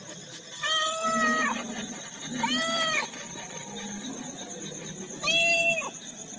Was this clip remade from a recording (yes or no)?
no